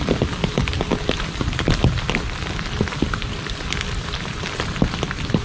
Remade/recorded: recorded